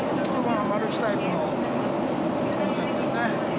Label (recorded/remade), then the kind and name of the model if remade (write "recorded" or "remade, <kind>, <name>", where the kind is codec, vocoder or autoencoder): recorded